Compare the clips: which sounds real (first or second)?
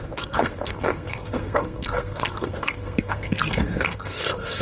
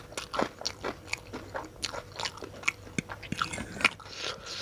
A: second